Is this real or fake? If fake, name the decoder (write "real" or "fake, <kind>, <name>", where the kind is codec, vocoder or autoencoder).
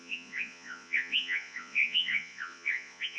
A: fake, vocoder, Vocos